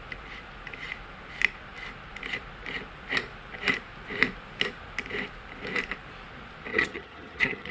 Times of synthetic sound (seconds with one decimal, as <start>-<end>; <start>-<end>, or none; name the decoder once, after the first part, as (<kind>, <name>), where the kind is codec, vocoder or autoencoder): 6.7-7.7 (vocoder, HiFi-GAN)